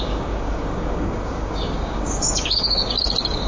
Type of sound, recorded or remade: remade